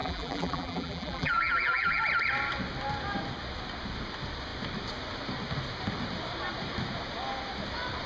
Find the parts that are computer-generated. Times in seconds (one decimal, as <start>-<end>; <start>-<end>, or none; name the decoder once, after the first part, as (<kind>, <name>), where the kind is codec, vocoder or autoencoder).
0.0-2.0 (vocoder, BigVGAN v2)